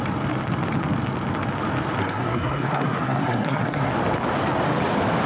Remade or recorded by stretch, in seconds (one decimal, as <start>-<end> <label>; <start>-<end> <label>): 0.0-2.0 recorded; 2.0-3.9 remade; 3.9-5.3 recorded